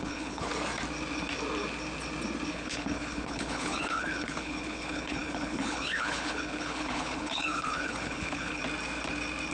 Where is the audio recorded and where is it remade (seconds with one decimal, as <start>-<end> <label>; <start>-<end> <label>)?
0.0-0.5 remade; 0.5-2.5 recorded; 2.5-8.6 remade; 8.6-9.5 recorded